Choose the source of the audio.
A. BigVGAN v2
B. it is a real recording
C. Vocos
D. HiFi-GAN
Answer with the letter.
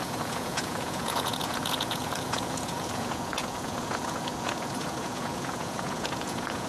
C